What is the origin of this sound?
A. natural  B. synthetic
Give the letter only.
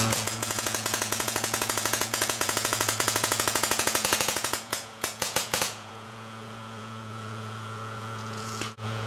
B